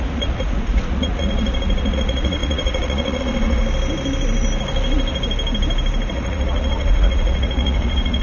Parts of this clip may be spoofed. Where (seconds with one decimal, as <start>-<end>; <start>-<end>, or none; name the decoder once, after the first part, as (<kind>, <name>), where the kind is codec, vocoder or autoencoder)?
0.0-3.6 (vocoder, Vocos); 6.1-8.2